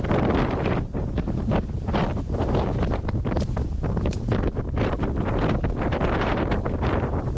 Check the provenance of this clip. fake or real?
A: real